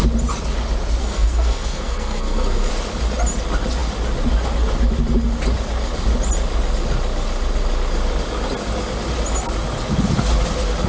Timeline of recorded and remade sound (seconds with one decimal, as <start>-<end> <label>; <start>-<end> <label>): 0.0-1.0 recorded; 1.0-2.7 remade; 2.7-10.9 recorded